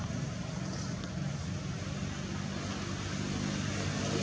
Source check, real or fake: real